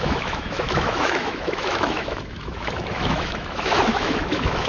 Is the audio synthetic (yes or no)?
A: yes